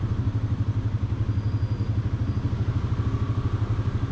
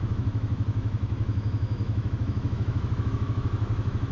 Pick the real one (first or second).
first